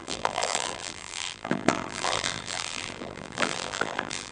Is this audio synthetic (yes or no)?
yes